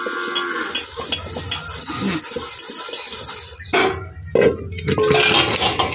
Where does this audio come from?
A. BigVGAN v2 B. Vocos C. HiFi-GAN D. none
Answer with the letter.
D